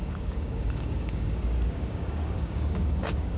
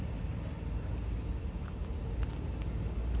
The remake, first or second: first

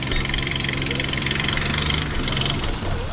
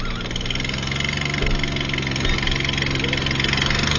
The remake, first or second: first